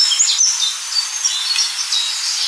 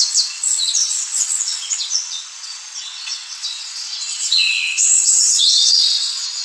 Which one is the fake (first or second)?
second